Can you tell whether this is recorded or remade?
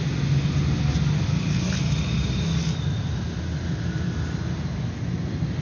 recorded